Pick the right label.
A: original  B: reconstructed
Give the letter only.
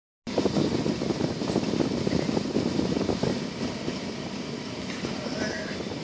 A